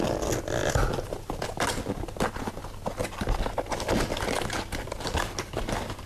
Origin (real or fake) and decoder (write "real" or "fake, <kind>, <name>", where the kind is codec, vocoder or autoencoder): real